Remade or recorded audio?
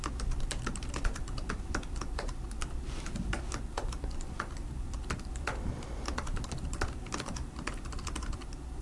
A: remade